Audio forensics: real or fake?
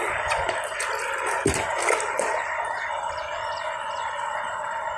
real